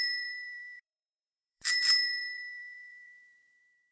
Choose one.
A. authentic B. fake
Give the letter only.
B